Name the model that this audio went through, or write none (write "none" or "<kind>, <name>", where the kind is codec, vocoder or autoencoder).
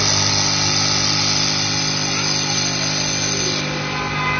none